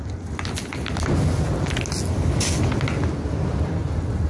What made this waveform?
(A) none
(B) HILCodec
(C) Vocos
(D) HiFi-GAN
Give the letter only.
A